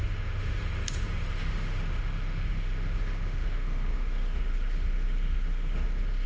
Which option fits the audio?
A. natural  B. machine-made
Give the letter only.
B